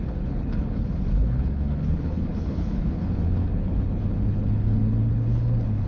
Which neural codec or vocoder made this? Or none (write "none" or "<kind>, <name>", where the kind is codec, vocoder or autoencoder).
codec, HILCodec